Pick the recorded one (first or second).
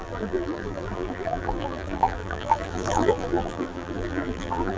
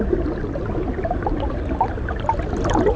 second